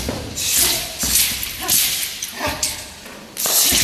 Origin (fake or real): real